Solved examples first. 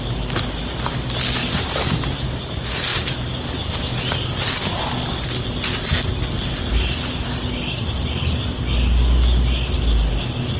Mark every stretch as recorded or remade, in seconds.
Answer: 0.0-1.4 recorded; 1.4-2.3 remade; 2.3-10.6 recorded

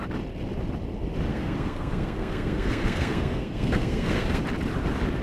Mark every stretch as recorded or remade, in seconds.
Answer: 0.0-1.3 recorded; 1.3-4.4 remade; 4.4-5.2 recorded

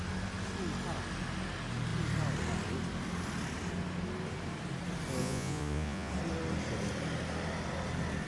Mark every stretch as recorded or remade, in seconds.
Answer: 0.0-5.2 recorded; 5.2-6.1 remade; 6.1-8.3 recorded

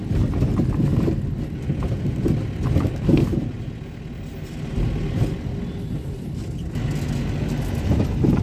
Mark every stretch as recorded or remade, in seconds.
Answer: 0.0-8.4 recorded